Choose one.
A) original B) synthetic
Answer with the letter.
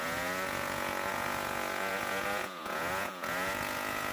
B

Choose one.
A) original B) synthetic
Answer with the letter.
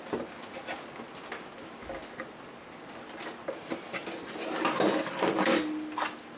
A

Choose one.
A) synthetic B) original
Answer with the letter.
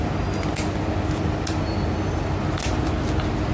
B